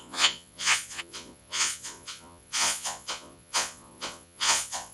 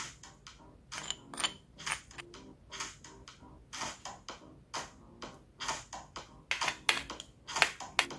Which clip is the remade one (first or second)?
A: first